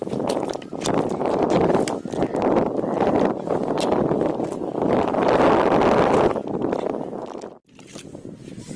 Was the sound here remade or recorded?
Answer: recorded